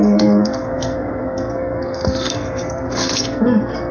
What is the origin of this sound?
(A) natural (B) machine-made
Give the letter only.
B